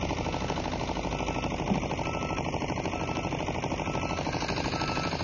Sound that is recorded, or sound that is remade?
recorded